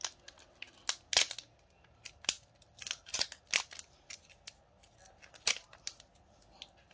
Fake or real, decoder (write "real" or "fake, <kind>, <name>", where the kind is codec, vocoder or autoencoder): real